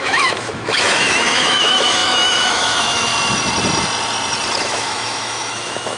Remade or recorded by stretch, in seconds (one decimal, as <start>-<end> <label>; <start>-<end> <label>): 0.0-3.1 remade; 3.1-4.6 recorded; 4.6-6.0 remade